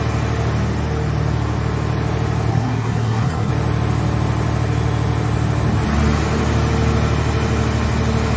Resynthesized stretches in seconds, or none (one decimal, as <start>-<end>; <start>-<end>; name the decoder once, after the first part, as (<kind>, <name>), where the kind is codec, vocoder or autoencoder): 2.5-3.5 (codec, SNAC)